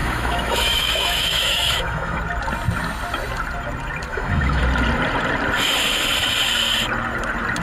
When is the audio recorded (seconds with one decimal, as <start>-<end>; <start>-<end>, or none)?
2.2-4.1; 4.6-7.6